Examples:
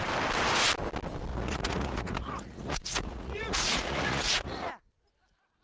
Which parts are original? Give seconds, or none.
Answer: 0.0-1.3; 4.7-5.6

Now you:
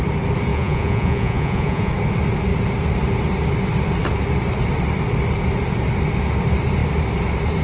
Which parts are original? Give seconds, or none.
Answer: 0.0-0.5; 1.9-7.6

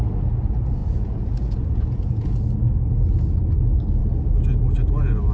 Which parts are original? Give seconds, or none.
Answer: 0.0-0.8; 2.4-5.3

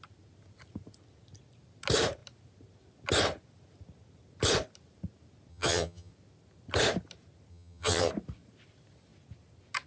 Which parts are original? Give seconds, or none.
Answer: 0.0-5.5; 6.1-7.5; 8.1-9.9

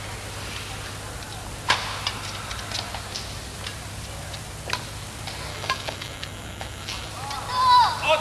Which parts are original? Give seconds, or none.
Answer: 0.0-5.5; 7.1-8.2